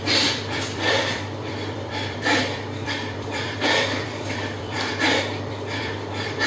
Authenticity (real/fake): fake